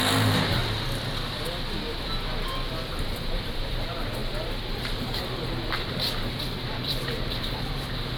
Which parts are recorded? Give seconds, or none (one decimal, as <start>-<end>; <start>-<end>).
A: 0.6-2.9